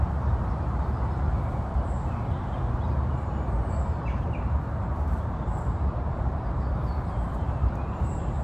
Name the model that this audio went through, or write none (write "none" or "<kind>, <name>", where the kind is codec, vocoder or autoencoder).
vocoder, BigVGAN v2